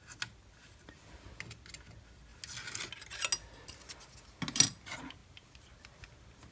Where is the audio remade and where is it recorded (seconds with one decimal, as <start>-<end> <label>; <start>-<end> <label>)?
0.0-6.5 recorded